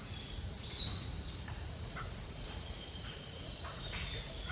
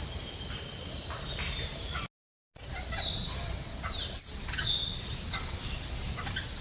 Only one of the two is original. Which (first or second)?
second